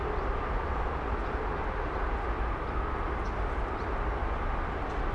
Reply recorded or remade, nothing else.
recorded